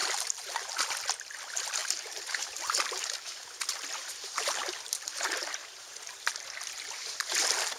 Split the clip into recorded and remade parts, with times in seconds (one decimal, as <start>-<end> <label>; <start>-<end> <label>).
0.0-0.7 remade; 0.7-1.8 recorded; 1.8-6.3 remade; 6.3-7.8 recorded